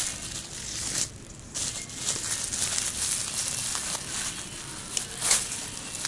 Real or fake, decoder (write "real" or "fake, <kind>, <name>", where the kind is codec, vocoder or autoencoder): real